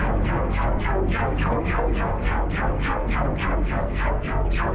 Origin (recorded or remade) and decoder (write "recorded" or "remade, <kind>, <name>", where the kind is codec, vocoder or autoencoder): remade, codec, SNAC